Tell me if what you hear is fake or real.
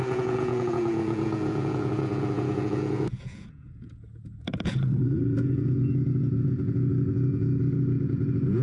fake